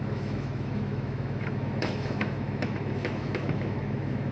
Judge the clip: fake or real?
fake